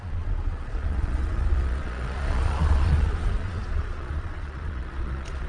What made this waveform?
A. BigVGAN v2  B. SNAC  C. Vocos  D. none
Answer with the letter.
C